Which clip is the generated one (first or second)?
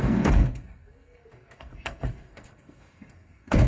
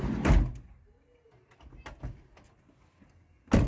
first